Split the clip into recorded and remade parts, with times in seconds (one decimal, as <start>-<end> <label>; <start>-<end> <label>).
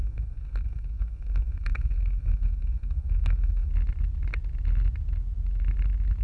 0.0-3.7 remade; 3.7-6.2 recorded